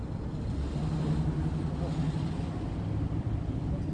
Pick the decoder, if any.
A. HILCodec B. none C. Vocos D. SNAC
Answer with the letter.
B